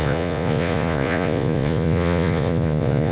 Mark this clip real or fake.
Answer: fake